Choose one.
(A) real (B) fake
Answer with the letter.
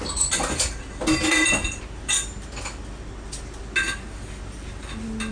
A